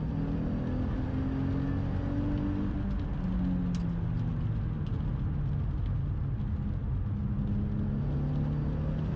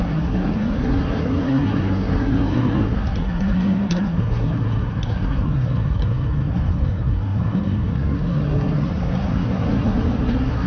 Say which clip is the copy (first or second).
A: second